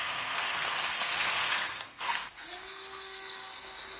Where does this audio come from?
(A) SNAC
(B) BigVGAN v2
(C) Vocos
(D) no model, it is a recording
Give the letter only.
A